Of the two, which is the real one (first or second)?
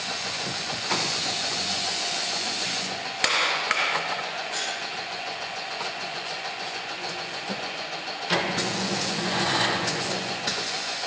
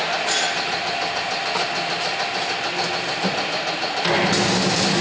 second